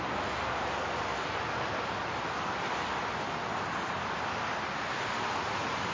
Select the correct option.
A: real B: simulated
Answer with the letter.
A